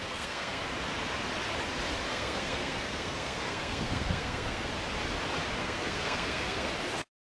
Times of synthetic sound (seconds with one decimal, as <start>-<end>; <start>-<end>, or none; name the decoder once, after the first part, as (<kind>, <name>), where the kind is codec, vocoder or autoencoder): 0.0-0.6 (codec, SNAC); 2.1-4.7; 5.6-6.7